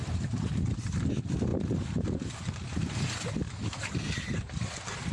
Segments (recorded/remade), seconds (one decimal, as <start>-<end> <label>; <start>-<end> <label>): 0.0-5.1 recorded